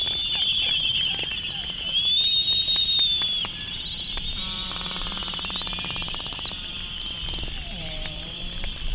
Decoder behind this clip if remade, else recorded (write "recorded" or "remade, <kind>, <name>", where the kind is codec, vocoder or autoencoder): remade, vocoder, BigVGAN v2